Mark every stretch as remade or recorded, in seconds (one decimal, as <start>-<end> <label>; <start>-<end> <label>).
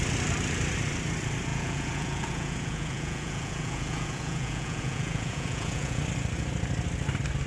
0.0-1.5 recorded; 1.5-6.0 remade; 6.0-7.5 recorded